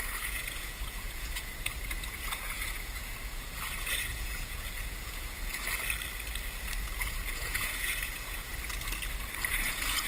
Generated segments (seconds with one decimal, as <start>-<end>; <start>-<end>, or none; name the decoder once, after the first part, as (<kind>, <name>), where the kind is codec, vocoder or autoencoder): 0.0-5.5 (vocoder, Vocos); 6.8-8.5; 9.5-10.1